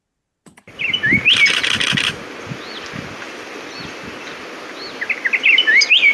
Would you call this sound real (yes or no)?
yes